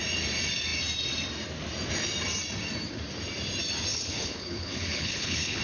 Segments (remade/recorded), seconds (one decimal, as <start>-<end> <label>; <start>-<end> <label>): 0.0-3.9 recorded; 3.9-5.6 remade